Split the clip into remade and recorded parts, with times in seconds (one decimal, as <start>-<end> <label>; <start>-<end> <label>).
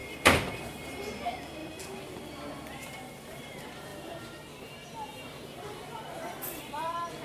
0.0-3.9 remade; 3.9-5.7 recorded; 5.7-7.2 remade